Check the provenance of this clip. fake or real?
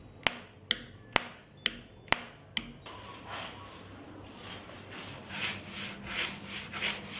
real